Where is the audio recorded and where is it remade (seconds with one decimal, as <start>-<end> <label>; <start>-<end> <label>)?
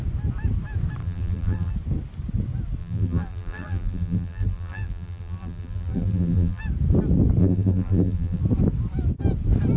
0.0-1.0 recorded; 1.0-1.7 remade; 1.7-2.8 recorded; 2.8-6.6 remade; 6.6-7.4 recorded; 7.4-8.4 remade; 8.4-9.8 recorded